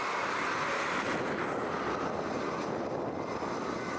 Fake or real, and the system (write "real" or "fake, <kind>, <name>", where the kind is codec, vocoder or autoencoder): real